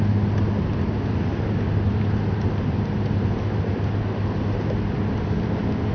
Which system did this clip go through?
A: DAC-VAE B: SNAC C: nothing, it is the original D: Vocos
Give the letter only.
C